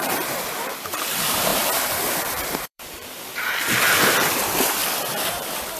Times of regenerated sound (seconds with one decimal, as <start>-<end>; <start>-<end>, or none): 0.0-1.5; 2.2-5.8